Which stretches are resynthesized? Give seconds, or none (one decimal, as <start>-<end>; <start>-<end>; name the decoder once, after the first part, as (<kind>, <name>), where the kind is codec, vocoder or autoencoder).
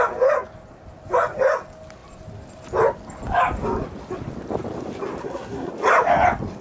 5.2-5.7 (codec, SNAC)